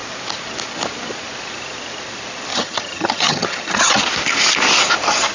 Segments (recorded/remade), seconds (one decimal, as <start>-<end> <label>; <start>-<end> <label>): 0.0-2.5 recorded; 2.5-3.9 remade; 3.9-5.3 recorded